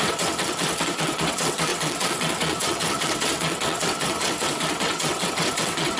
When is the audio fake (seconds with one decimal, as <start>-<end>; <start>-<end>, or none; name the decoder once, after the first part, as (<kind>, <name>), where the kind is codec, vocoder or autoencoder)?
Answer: 0.0-6.0 (vocoder, WaveNeXt)